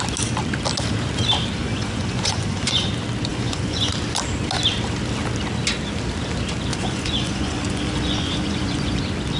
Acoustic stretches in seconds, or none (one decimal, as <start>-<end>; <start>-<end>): 0.0-1.6; 2.9-3.3; 3.9-6.7; 9.0-9.4